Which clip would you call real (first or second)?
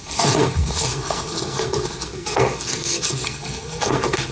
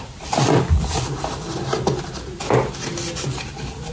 second